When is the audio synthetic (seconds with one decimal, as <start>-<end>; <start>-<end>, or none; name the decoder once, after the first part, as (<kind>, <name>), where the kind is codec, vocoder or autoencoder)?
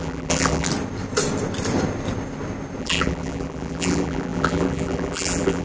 0.0-0.7 (vocoder, BigVGAN v2); 2.8-5.6